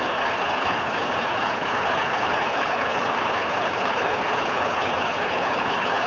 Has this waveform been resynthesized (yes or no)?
yes